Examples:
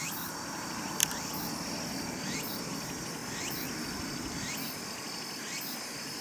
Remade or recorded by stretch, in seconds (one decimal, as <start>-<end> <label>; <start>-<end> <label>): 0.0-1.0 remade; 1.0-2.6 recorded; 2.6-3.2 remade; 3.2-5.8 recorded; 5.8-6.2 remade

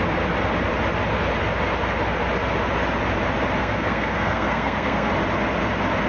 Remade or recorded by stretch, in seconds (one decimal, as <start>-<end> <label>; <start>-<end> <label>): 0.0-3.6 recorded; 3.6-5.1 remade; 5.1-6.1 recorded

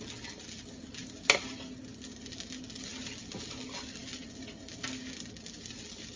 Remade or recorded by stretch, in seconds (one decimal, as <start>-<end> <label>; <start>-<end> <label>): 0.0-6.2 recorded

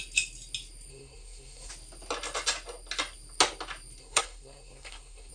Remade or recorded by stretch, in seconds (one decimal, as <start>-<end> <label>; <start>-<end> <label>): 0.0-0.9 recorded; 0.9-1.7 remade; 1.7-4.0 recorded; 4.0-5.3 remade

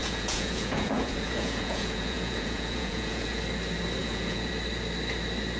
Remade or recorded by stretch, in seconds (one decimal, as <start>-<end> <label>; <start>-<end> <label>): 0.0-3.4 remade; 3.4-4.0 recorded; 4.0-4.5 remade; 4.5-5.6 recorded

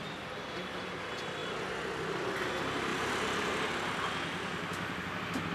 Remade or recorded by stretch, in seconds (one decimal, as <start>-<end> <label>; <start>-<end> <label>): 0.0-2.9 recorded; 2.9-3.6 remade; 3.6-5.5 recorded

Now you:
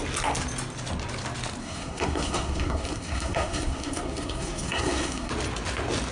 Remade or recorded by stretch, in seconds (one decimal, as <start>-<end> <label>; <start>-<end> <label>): 0.0-1.6 recorded; 1.6-5.3 remade; 5.3-6.1 recorded

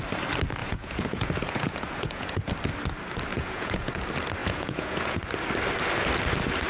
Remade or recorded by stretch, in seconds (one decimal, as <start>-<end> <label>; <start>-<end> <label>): 0.0-0.6 recorded; 0.6-2.5 remade; 2.5-3.3 recorded; 3.3-3.9 remade; 3.9-4.4 recorded; 4.4-5.2 remade; 5.2-6.7 recorded